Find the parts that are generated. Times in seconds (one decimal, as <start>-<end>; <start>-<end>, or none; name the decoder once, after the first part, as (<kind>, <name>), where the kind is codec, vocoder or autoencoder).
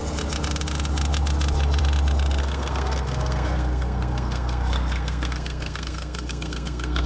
2.4-7.1 (codec, SNAC)